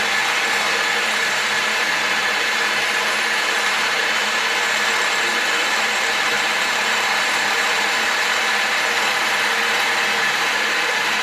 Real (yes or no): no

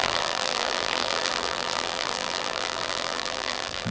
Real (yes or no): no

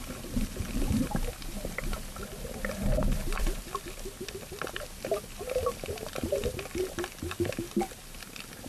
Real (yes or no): no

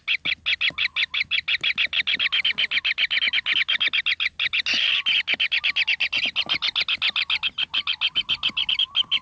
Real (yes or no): yes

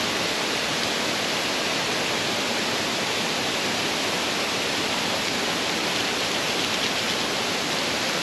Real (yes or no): yes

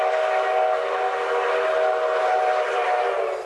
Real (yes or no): yes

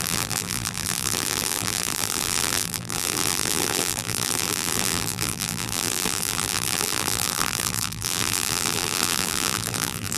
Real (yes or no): no